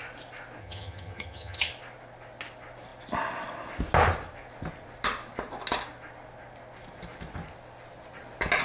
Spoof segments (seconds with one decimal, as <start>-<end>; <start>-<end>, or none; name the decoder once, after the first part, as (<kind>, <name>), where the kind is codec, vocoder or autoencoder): 0.6-1.7 (vocoder, HiFi-GAN)